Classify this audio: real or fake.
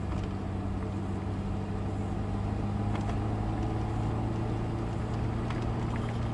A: real